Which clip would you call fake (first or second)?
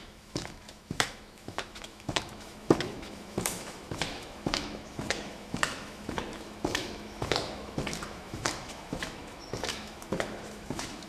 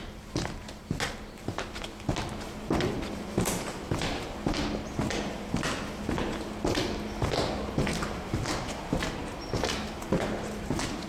first